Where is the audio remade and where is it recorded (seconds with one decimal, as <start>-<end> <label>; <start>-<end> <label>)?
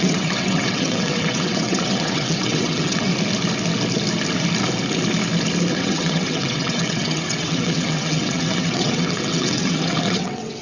0.0-3.1 remade; 3.1-5.7 recorded; 5.7-10.6 remade